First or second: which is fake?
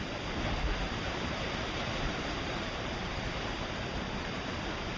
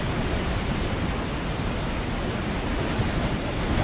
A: first